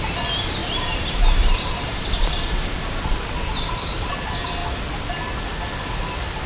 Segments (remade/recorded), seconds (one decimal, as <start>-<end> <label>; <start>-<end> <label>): 0.0-0.6 recorded; 0.6-4.1 remade; 4.1-6.5 recorded